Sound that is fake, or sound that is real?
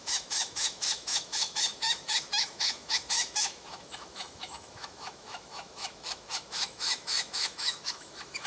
fake